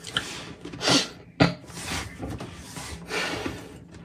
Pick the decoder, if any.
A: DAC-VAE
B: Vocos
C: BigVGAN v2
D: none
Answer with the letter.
D